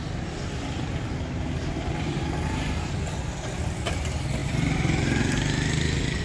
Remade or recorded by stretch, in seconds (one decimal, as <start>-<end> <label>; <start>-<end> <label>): 0.0-6.2 recorded